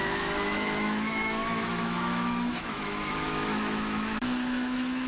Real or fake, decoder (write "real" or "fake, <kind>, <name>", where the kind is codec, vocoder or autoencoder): fake, autoencoder, DAC-VAE